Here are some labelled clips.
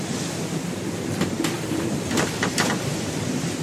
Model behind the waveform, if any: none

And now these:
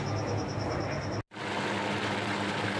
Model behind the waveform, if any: none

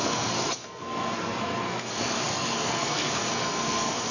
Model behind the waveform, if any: codec, SNAC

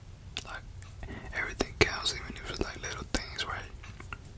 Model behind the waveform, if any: none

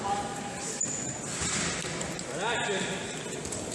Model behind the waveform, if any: none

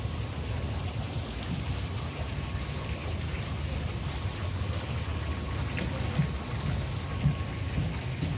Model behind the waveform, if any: none